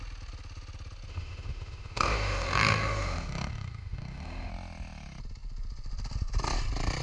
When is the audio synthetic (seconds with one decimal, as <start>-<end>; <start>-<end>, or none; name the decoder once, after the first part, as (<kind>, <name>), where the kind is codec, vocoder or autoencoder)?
1.1-4.5 (autoencoder, DAC-VAE)